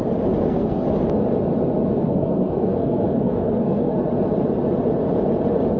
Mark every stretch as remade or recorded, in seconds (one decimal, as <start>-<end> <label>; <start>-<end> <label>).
0.0-0.4 recorded; 0.4-0.9 remade; 0.9-2.0 recorded; 2.0-4.0 remade; 4.0-5.8 recorded